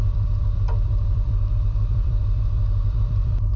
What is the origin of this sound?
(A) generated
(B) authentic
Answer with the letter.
A